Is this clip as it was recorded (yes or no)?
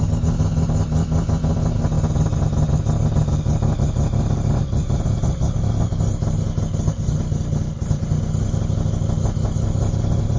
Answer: yes